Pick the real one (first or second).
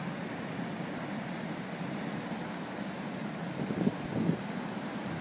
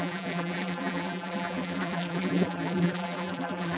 first